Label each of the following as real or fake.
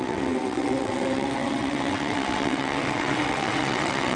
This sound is fake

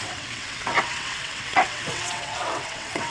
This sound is fake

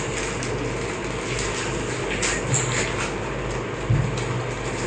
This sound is real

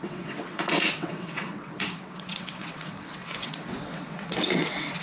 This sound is fake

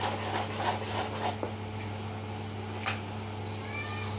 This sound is real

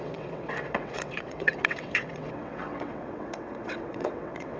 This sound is fake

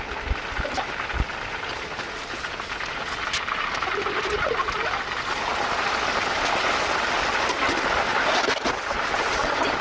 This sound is real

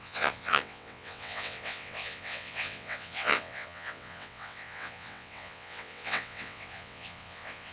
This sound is fake